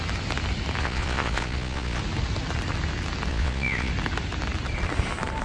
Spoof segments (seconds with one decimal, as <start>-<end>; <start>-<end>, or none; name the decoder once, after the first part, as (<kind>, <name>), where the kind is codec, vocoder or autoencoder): 0.8-2.0 (vocoder, Vocos); 3.3-3.9